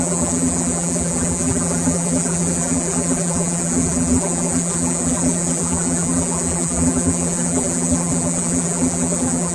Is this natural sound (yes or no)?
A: no